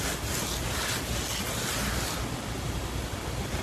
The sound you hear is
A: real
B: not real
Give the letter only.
A